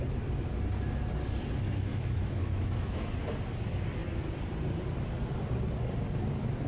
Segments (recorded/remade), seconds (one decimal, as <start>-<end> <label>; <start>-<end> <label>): 0.0-1.9 recorded; 1.9-3.1 remade; 3.1-6.7 recorded